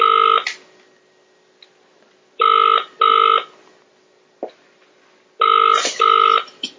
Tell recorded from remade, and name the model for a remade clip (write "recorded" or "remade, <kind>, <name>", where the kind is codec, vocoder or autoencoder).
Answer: recorded